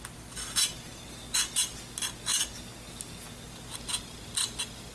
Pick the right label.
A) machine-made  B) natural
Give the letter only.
B